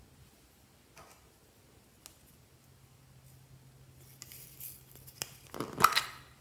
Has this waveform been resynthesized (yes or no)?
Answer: no